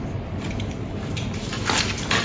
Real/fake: fake